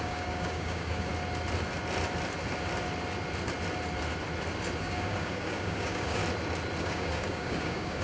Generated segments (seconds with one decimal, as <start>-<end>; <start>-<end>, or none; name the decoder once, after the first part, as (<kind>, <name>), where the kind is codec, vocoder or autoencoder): 0.0-1.1 (codec, DAC); 4.8-6.2; 6.8-8.0